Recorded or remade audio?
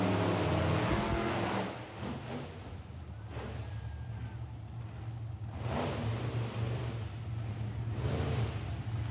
recorded